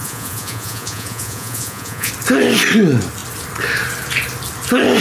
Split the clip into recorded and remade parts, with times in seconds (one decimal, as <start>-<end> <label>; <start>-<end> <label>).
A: 0.0-2.1 remade; 2.1-5.0 recorded